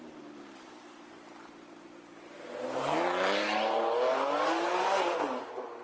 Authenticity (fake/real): real